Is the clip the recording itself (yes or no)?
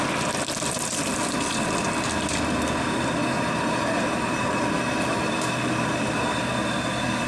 yes